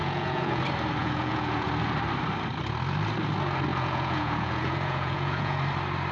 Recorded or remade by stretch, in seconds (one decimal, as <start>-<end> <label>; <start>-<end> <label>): 0.0-0.6 remade; 0.6-1.0 recorded; 1.0-1.7 remade; 1.7-3.7 recorded; 3.7-5.6 remade; 5.6-6.1 recorded